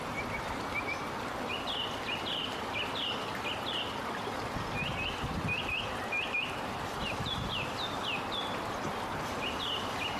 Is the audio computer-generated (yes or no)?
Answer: no